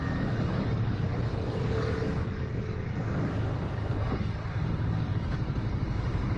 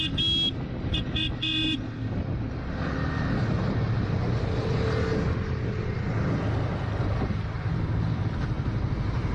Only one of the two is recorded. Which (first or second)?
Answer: second